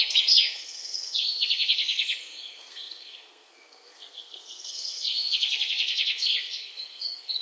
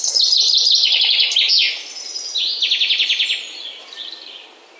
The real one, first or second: second